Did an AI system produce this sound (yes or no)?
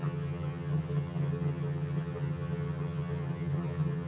yes